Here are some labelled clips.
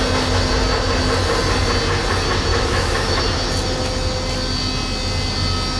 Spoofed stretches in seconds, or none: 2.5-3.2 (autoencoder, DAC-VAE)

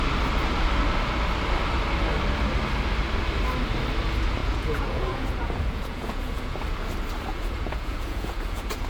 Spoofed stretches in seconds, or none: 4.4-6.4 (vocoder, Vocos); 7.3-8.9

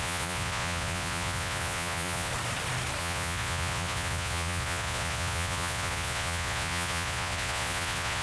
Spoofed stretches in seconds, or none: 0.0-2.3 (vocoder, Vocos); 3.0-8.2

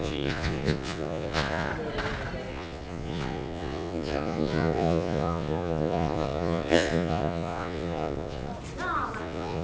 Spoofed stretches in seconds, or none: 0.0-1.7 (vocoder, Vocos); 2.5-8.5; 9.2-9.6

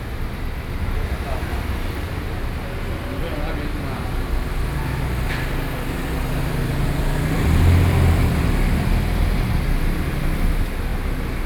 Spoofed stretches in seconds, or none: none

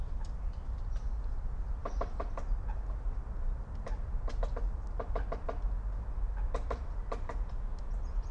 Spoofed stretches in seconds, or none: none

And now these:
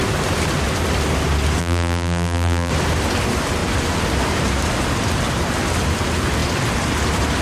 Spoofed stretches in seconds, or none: 1.6-2.7 (vocoder, BigVGAN v2)